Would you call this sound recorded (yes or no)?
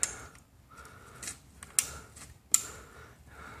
yes